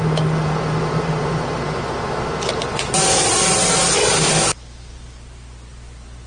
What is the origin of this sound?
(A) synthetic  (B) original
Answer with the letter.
B